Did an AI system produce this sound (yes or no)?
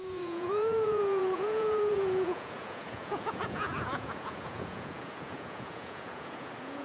yes